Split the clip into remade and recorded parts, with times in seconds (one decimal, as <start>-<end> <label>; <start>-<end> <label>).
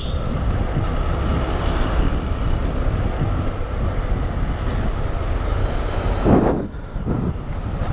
0.0-5.6 recorded; 5.6-6.4 remade; 6.4-7.9 recorded